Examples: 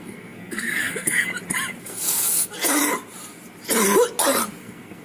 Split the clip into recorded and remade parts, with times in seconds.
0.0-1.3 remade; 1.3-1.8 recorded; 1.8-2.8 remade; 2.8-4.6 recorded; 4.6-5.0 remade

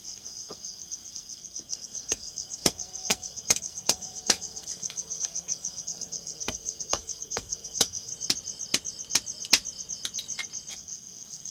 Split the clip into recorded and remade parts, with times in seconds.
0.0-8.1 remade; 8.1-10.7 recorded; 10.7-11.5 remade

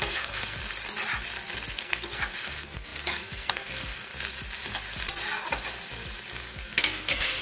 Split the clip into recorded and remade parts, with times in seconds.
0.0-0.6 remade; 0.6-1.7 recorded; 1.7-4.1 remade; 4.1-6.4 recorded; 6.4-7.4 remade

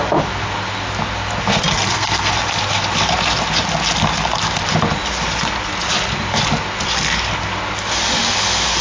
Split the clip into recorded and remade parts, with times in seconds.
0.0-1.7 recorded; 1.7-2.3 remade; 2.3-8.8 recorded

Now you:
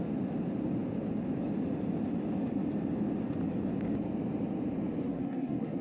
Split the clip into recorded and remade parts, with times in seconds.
0.0-5.0 recorded; 5.0-5.8 remade

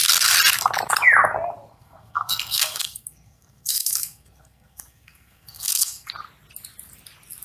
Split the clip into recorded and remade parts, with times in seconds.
0.0-1.7 recorded; 1.7-6.1 remade; 6.1-7.4 recorded